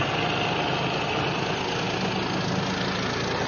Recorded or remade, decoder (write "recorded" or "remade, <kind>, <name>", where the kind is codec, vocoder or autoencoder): recorded